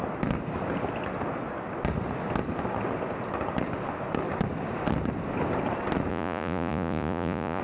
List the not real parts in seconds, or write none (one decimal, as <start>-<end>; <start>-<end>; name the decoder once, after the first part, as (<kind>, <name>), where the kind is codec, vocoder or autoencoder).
6.1-7.6 (vocoder, Vocos)

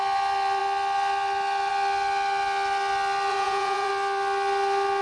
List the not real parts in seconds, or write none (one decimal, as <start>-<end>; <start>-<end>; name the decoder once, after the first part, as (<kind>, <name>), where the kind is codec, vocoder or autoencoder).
3.3-3.9 (vocoder, Vocos)

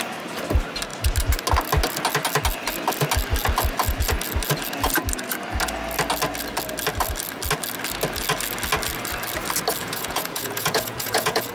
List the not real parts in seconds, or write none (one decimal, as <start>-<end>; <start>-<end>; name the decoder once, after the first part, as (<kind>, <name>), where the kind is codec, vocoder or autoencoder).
9.8-11.5 (vocoder, Vocos)